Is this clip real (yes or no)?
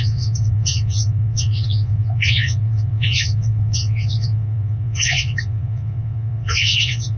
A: no